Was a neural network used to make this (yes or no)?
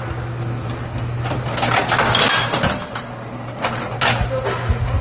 no